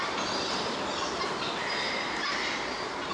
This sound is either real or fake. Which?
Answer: real